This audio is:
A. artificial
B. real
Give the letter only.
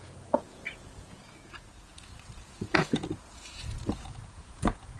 A